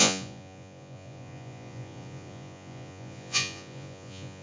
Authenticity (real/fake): fake